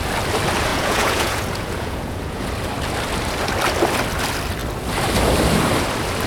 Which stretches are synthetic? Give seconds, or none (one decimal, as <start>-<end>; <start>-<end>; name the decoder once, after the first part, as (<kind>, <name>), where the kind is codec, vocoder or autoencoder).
0.7-2.5 (vocoder, Vocos)